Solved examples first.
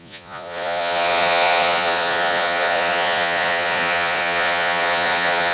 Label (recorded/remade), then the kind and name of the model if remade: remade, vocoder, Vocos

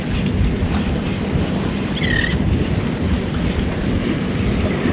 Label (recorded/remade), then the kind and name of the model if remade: recorded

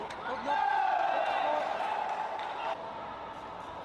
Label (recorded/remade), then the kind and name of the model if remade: recorded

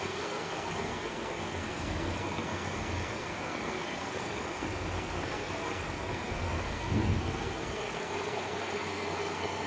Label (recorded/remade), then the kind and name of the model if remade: remade, codec, SNAC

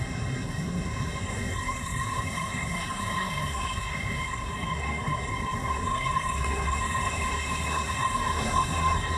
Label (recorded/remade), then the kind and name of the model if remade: remade, codec, SNAC